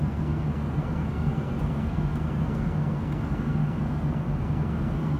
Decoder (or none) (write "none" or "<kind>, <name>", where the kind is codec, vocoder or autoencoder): codec, SNAC